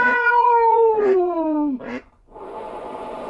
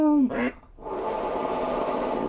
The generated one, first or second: first